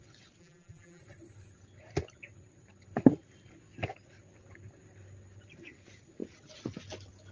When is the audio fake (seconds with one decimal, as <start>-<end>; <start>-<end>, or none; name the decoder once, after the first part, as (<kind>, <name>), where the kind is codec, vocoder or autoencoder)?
0.4-1.0 (vocoder, BigVGAN v2)